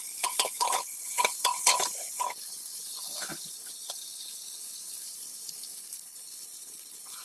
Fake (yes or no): yes